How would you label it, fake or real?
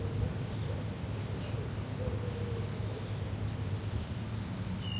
real